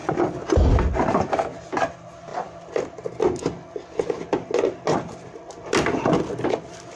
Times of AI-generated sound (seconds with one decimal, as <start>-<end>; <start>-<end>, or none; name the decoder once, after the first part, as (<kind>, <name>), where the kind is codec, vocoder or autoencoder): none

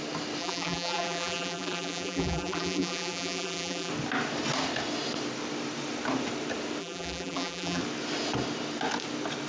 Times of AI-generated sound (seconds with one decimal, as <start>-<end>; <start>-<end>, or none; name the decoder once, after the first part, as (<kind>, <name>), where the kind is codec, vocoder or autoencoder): 0.4-3.9 (vocoder, BigVGAN v2); 6.8-7.8

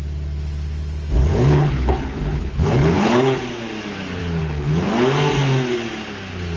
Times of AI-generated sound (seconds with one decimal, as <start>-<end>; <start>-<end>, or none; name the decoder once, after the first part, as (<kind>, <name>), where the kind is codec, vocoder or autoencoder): 1.2-3.4 (codec, HILCodec); 4.2-4.9